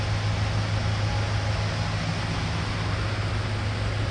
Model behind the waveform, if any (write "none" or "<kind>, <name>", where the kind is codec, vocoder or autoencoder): none